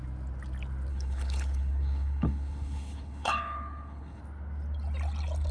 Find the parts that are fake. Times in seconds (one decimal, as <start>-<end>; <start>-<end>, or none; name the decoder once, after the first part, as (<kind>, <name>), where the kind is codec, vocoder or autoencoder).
0.9-4.2 (codec, HILCodec)